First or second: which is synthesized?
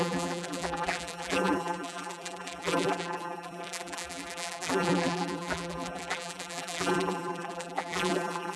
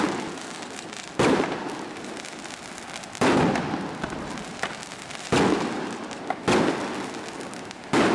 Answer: first